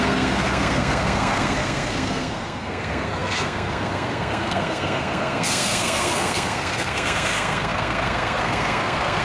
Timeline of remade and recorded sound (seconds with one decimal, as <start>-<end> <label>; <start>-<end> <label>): 0.0-9.2 remade